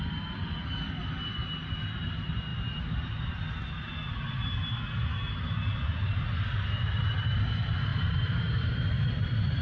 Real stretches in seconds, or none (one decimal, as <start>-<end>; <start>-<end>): 0.0-2.5; 3.3-7.9; 8.8-9.6